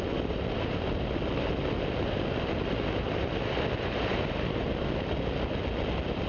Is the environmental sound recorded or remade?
recorded